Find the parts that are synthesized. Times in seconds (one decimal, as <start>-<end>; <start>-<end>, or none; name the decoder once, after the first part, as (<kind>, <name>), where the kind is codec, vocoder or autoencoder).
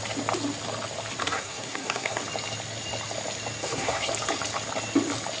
1.2-2.2 (codec, SNAC); 3.6-4.1